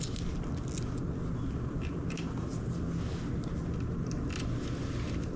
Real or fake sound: real